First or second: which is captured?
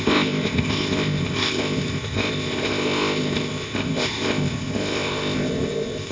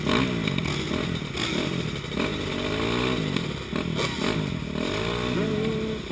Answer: second